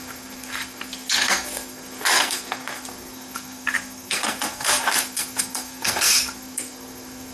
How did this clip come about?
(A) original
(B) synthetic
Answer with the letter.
B